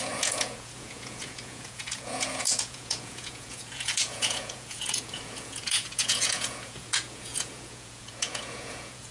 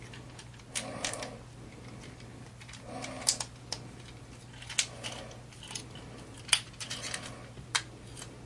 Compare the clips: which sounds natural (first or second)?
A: second